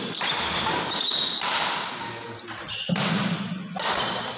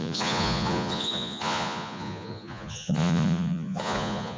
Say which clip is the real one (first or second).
first